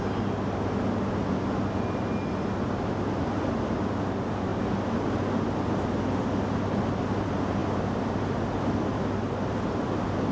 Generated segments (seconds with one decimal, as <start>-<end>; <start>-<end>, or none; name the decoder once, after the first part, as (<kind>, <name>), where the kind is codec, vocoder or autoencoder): none